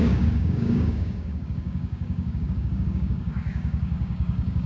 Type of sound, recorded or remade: remade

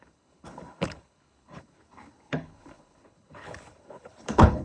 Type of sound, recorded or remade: remade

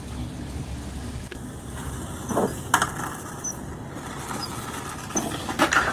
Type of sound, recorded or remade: recorded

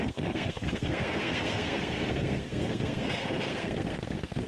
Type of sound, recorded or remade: remade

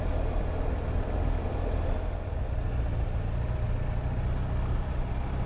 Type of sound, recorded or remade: recorded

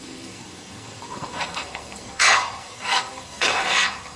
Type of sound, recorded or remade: remade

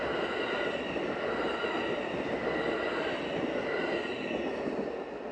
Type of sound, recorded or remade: recorded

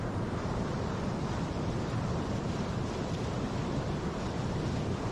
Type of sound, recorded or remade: recorded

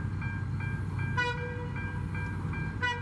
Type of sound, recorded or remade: recorded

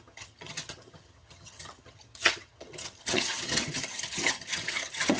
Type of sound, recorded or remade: remade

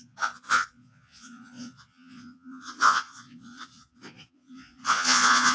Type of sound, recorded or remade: remade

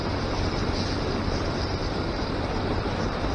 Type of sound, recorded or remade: remade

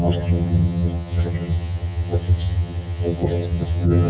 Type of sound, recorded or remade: remade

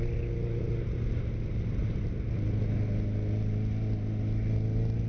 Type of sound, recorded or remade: recorded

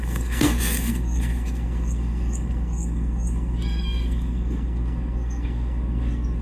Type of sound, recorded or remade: remade